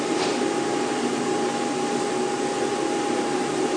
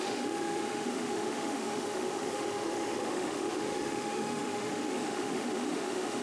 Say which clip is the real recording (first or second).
first